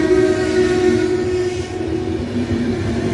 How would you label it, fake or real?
real